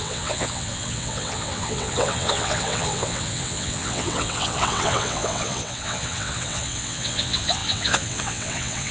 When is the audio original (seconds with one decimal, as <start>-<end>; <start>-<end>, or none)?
none